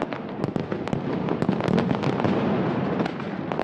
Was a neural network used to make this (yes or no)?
no